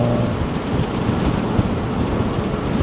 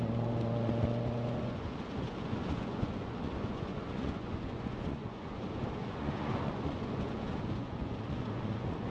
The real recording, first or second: first